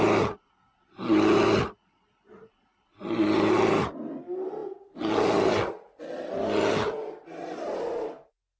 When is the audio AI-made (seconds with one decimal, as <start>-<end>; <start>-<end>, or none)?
none